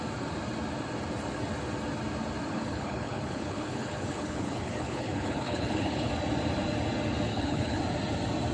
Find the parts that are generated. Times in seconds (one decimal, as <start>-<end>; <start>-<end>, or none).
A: 2.5-6.1; 7.3-7.8